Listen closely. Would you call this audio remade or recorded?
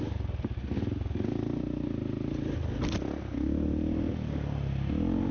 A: recorded